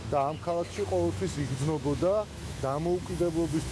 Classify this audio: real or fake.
fake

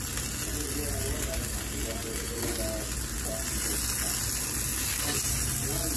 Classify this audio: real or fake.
real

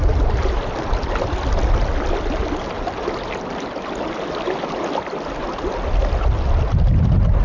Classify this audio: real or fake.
real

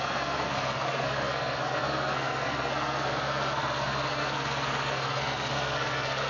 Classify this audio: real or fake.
fake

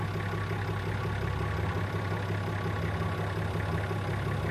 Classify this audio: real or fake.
real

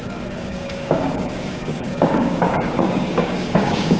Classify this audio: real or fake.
fake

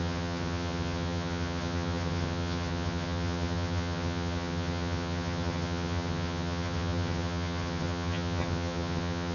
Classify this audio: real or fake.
fake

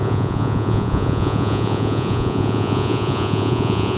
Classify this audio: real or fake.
fake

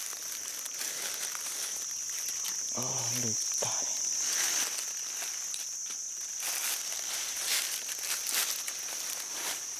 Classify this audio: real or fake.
real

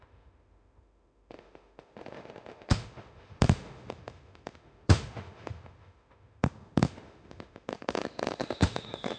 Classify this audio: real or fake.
fake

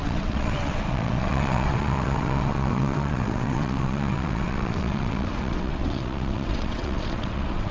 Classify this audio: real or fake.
fake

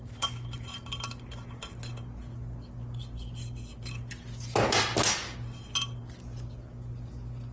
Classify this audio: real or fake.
real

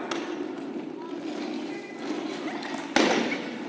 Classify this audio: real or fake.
real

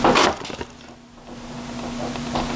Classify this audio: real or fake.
real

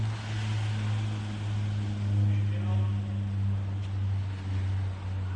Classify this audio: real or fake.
real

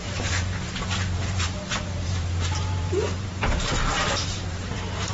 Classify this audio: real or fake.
fake